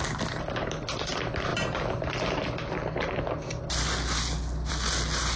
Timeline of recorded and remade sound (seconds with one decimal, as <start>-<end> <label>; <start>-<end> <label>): 0.0-5.4 recorded